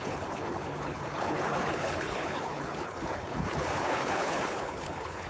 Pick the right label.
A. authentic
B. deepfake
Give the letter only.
B